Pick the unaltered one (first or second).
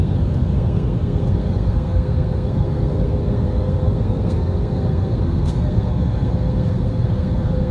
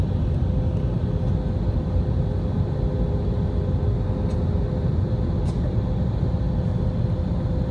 second